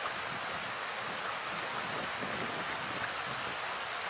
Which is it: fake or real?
real